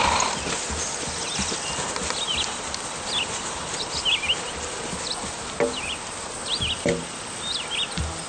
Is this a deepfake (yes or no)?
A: no